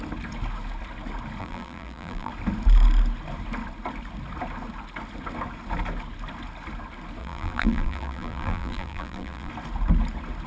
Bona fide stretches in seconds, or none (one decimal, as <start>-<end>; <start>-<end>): 0.0-1.4; 2.3-7.2; 9.5-10.5